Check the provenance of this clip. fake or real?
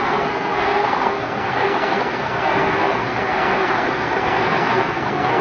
fake